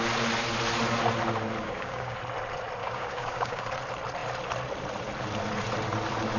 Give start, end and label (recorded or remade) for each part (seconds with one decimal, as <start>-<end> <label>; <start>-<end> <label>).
0.0-1.6 recorded; 1.6-2.2 remade; 2.2-2.8 recorded; 2.8-3.7 remade; 3.7-6.4 recorded